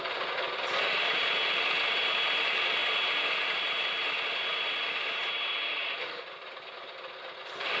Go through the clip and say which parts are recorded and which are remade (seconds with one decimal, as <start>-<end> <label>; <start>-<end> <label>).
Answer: 0.0-7.8 recorded